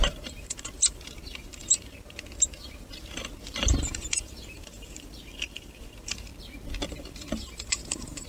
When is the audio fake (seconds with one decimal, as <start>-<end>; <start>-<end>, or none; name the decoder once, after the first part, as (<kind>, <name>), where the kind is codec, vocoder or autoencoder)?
0.0-6.3 (vocoder, BigVGAN v2); 6.9-8.3